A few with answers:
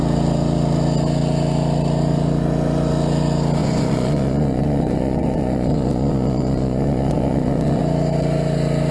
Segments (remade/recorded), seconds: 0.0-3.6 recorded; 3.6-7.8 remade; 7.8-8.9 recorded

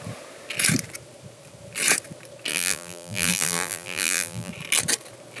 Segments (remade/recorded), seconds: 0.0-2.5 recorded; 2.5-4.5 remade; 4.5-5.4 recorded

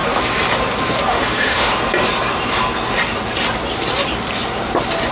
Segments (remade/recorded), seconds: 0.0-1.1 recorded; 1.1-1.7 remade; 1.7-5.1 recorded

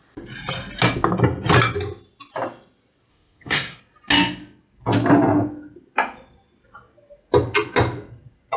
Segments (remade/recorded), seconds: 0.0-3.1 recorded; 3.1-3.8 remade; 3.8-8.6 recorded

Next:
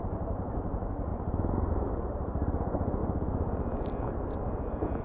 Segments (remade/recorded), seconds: 0.0-3.0 remade; 3.0-5.0 recorded

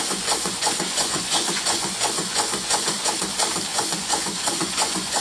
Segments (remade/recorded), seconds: 0.0-3.1 remade; 3.1-3.7 recorded; 3.7-5.2 remade